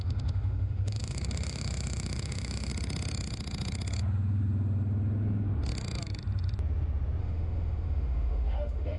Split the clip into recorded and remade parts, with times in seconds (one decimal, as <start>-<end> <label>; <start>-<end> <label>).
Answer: 0.0-2.7 remade; 2.7-7.2 recorded; 7.2-9.0 remade